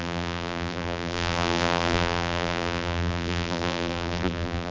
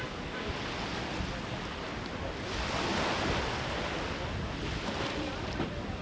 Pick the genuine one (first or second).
second